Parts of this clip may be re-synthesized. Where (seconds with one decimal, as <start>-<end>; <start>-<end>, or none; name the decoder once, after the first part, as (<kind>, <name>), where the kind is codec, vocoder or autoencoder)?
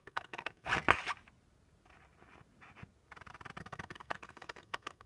0.0-0.7 (codec, SNAC); 3.6-5.1